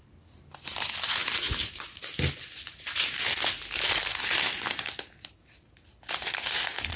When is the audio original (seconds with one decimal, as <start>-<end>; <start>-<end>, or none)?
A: 0.0-7.0